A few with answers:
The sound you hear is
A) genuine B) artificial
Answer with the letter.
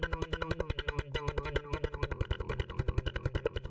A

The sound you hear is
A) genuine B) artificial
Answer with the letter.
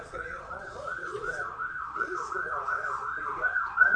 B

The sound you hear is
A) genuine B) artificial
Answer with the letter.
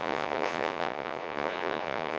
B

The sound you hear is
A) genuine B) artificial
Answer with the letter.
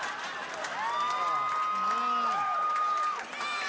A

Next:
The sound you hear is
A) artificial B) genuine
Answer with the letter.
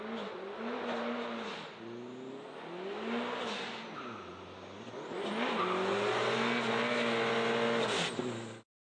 B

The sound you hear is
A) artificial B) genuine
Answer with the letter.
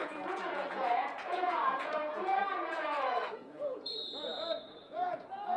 A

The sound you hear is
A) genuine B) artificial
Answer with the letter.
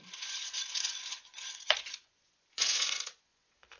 B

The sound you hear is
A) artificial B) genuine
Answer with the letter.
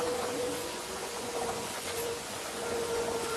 A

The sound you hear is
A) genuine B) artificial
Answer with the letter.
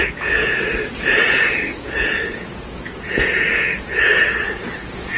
B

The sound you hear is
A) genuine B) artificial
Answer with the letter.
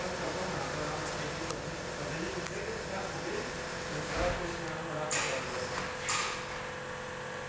A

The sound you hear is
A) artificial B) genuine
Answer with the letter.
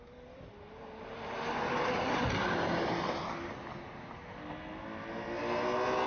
B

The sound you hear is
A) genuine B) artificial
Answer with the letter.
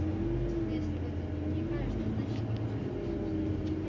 A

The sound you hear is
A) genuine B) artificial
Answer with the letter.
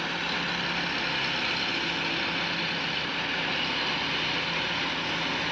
A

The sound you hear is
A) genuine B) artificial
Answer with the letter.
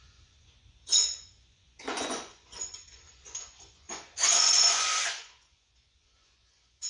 B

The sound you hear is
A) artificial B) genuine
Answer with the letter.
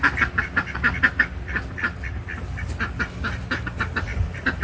B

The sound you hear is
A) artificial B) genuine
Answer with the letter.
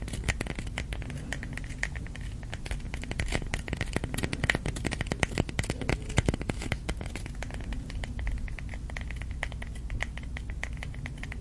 B